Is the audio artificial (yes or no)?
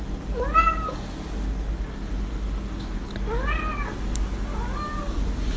no